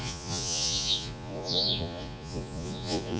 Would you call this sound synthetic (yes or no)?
yes